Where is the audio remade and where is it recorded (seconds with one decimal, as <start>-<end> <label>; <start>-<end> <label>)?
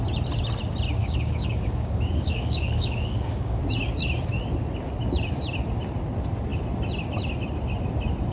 0.0-1.0 recorded; 1.0-3.6 remade; 3.6-8.3 recorded